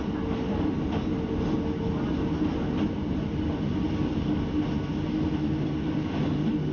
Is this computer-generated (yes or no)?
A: no